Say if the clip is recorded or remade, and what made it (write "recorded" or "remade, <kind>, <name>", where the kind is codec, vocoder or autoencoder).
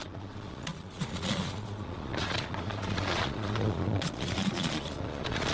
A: remade, vocoder, Vocos